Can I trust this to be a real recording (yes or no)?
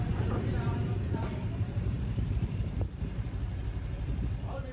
no